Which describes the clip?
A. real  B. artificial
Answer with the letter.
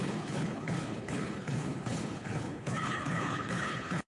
B